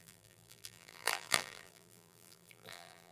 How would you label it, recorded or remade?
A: remade